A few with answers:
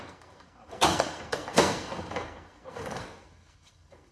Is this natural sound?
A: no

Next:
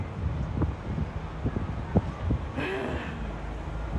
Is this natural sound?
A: yes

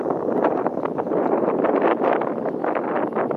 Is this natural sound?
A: yes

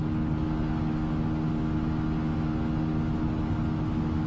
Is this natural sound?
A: yes